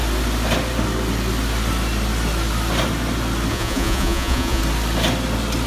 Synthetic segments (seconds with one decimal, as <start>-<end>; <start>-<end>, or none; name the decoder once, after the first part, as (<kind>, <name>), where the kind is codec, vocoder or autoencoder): 3.5-4.6 (vocoder, Vocos)